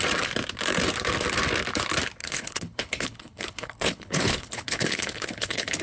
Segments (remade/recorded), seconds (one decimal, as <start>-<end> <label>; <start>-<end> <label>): 0.0-2.2 recorded; 2.2-5.8 remade